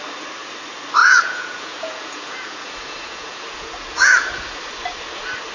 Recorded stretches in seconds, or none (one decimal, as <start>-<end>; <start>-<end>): 0.0-1.0; 4.3-5.5